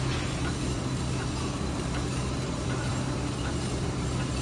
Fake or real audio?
fake